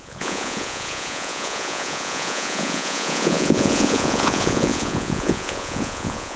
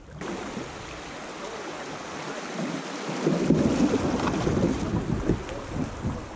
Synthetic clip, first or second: first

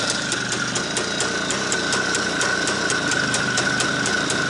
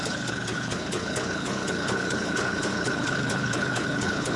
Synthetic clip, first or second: second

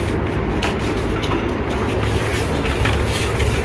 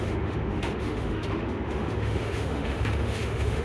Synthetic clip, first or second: second